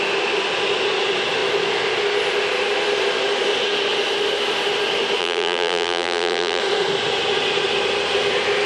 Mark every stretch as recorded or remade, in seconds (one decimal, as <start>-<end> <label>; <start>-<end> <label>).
0.0-5.2 recorded; 5.2-6.6 remade; 6.6-8.7 recorded